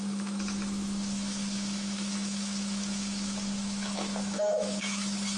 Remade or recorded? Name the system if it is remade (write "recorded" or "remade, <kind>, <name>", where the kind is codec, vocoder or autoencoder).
remade, autoencoder, DAC-VAE